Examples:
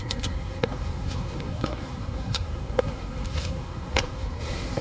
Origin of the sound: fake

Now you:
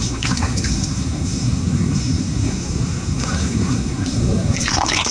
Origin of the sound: fake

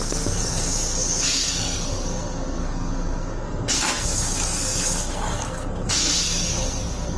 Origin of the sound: fake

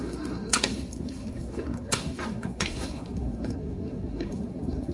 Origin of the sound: fake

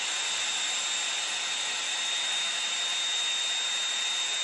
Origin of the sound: real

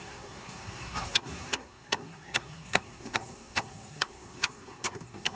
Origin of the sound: fake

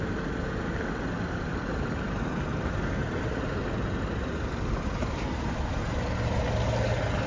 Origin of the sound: real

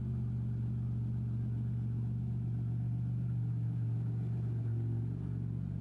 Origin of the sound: real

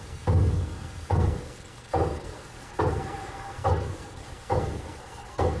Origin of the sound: fake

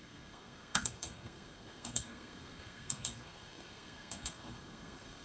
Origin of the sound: fake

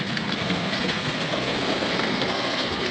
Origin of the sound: fake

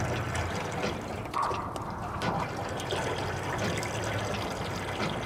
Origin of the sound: real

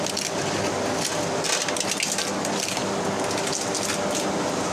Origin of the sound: real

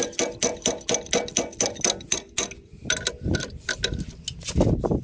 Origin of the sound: real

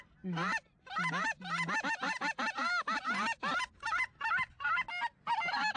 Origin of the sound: real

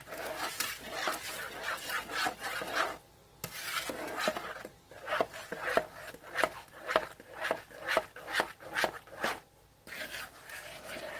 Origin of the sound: real